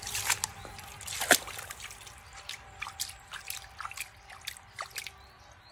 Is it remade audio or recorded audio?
recorded